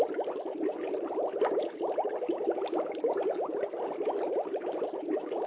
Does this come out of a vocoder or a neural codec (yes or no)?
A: no